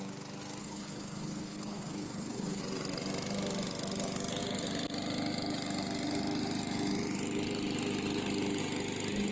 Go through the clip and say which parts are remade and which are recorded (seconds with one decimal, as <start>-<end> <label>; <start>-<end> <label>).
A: 0.0-0.6 recorded; 0.6-2.6 remade; 2.6-9.3 recorded